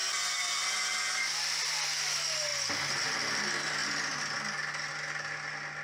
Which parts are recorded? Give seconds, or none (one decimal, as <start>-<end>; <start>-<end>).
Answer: 2.1-5.8